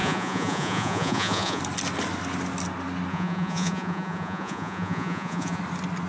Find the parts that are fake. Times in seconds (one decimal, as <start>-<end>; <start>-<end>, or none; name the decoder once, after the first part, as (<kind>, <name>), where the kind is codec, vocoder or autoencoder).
0.0-1.6 (vocoder, Vocos); 3.1-5.6